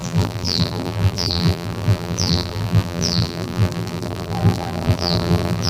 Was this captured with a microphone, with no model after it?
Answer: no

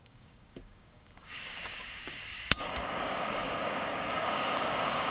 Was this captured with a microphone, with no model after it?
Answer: no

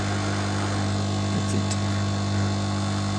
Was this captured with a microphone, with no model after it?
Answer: yes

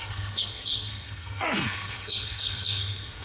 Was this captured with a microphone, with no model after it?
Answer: no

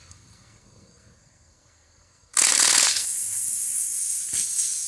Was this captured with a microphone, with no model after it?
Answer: no